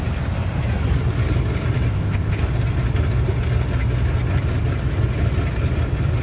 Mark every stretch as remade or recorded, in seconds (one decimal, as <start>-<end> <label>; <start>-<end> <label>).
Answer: 0.0-1.9 recorded; 1.9-2.4 remade; 2.4-6.2 recorded